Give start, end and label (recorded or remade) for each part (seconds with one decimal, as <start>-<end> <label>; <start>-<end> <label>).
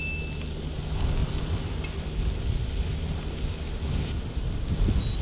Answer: 0.0-1.2 recorded; 1.2-2.7 remade; 2.7-5.2 recorded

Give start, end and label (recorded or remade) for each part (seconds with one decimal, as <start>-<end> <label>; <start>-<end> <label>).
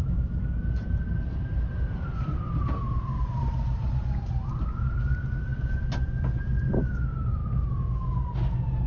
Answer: 0.0-5.5 remade; 5.5-6.4 recorded; 6.4-7.4 remade; 7.4-8.9 recorded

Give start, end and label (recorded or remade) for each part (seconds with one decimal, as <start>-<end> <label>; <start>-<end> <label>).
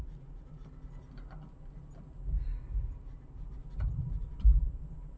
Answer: 0.0-2.8 recorded; 2.8-3.5 remade; 3.5-5.2 recorded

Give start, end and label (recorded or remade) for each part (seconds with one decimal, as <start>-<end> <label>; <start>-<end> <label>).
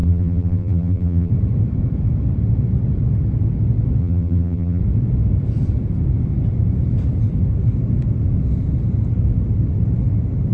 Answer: 0.0-1.3 remade; 1.3-4.0 recorded; 4.0-4.8 remade; 4.8-10.5 recorded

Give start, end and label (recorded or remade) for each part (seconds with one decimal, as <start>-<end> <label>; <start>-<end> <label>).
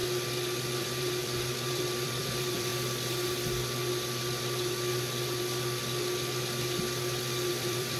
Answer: 0.0-0.8 recorded; 0.8-2.7 remade; 2.7-7.5 recorded; 7.5-8.0 remade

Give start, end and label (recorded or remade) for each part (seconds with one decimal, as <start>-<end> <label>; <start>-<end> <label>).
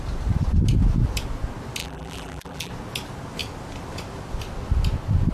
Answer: 0.0-1.8 recorded; 1.8-2.7 remade; 2.7-5.3 recorded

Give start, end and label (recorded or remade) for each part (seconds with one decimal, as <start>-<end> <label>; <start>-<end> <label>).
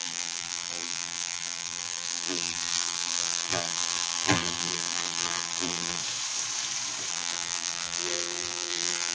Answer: 0.0-6.0 remade; 6.0-7.1 recorded; 7.1-9.1 remade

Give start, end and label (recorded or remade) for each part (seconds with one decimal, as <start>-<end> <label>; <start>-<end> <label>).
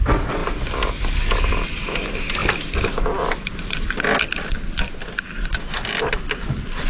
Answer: 0.0-6.9 recorded